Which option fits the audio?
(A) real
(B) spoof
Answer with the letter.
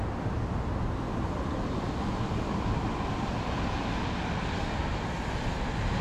A